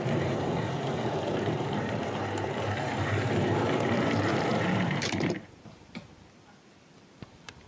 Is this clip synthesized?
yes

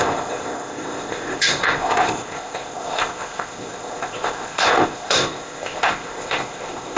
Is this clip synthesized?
yes